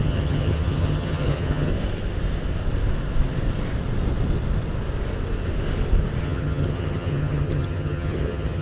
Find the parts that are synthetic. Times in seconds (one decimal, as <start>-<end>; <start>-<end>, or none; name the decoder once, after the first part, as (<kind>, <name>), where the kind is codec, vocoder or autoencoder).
0.0-1.7 (vocoder, HiFi-GAN); 6.2-8.6